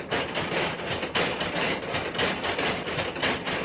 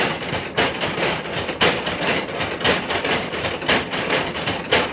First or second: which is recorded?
first